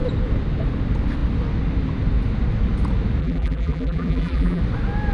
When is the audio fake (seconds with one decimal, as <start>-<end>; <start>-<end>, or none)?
3.2-4.6